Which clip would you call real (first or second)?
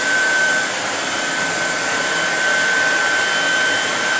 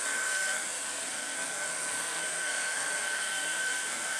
first